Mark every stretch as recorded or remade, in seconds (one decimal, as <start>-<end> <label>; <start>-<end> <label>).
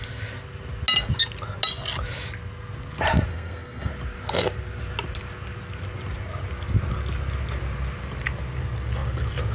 0.0-3.3 recorded; 3.3-3.9 remade; 3.9-9.5 recorded